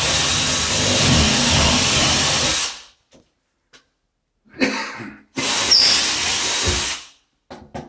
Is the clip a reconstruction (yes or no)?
no